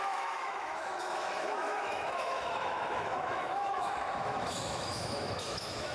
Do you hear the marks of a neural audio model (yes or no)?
yes